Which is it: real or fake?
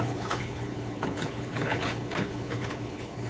fake